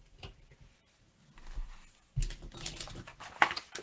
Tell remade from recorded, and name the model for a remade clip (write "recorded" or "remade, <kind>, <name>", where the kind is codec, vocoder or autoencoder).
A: recorded